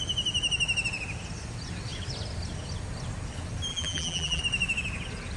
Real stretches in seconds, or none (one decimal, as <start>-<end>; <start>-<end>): 0.0-3.7; 4.4-5.4